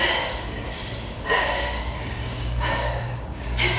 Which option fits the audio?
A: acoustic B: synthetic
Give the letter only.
B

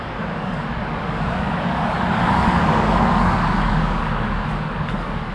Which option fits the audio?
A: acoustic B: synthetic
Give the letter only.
B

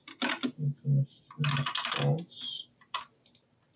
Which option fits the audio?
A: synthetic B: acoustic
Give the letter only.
B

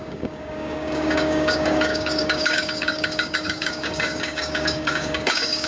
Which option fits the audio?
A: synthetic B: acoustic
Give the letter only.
A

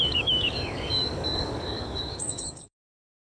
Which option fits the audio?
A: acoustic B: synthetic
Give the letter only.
B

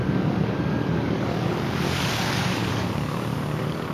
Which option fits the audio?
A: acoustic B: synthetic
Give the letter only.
B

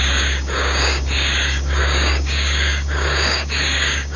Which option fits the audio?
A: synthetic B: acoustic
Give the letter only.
A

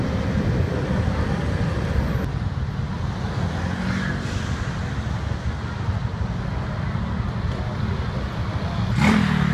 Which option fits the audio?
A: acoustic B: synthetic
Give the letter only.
A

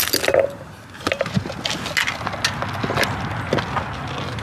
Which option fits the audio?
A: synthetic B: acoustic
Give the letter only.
B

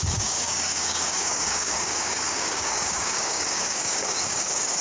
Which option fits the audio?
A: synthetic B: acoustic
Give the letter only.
A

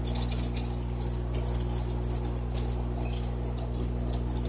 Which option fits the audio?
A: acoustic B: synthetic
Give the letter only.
A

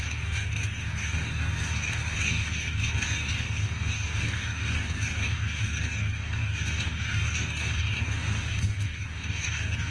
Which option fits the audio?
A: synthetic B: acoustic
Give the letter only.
A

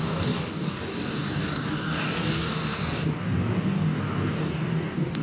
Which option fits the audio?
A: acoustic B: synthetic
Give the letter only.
B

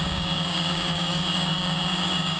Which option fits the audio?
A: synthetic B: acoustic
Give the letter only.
A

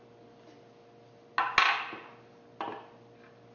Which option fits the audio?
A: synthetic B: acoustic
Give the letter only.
B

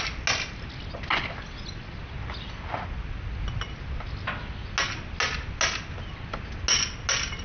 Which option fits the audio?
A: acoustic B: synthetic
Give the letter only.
A